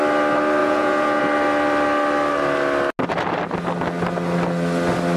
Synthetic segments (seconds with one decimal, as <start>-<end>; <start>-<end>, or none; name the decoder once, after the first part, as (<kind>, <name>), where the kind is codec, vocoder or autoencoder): 0.6-1.2 (vocoder, Vocos)